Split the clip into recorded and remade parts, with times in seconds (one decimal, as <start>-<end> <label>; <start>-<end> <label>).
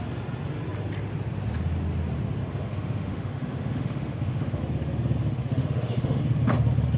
0.0-2.5 recorded; 2.5-4.6 remade; 4.6-5.6 recorded; 5.6-6.2 remade; 6.2-7.0 recorded